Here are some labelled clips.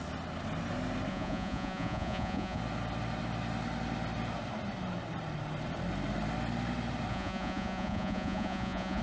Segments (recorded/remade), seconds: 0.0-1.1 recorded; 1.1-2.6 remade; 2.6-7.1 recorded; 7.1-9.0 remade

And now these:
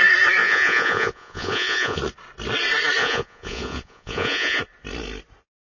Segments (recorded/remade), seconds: 0.0-0.4 recorded; 0.4-2.0 remade; 2.0-3.0 recorded; 3.0-4.6 remade; 4.6-5.6 recorded

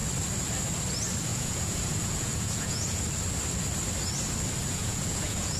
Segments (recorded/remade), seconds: 0.0-1.3 recorded; 1.3-3.0 remade; 3.0-4.7 recorded; 4.7-5.6 remade

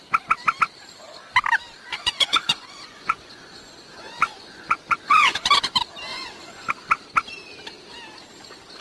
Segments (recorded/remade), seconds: 0.0-1.9 recorded; 1.9-5.5 remade; 5.5-6.1 recorded; 6.1-6.7 remade; 6.7-8.8 recorded

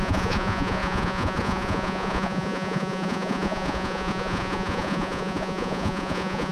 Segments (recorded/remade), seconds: 0.0-6.5 remade

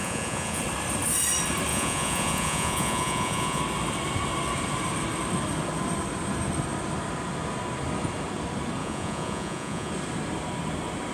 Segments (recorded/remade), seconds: 0.0-0.6 remade; 0.6-1.7 recorded; 1.7-3.6 remade; 3.6-8.8 recorded; 8.8-9.9 remade; 9.9-11.1 recorded

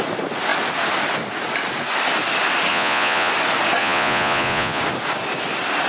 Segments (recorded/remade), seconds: 0.0-2.7 recorded; 2.7-3.3 remade; 3.3-3.8 recorded; 3.8-4.8 remade; 4.8-5.9 recorded

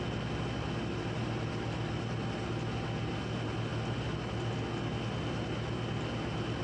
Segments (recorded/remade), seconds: 0.0-6.6 recorded